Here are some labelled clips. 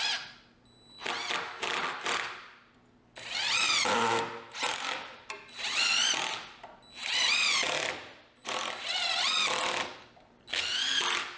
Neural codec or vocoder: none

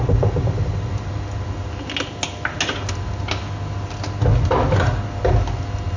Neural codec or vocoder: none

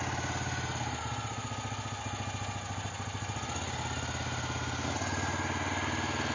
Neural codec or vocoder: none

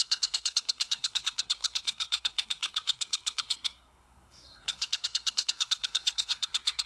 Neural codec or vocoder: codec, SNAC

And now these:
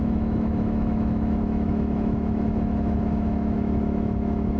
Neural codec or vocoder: autoencoder, DAC-VAE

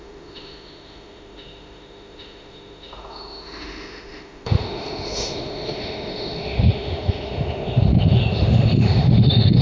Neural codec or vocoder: autoencoder, DAC-VAE